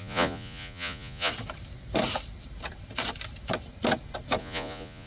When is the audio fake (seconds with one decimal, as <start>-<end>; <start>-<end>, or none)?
0.0-1.3; 4.4-5.1